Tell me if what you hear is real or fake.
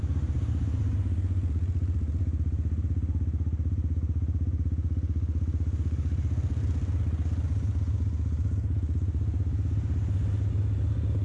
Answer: real